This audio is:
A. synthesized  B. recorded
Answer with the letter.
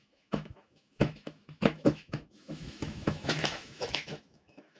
A